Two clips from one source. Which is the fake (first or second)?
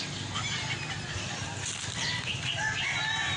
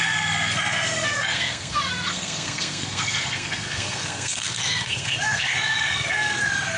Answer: second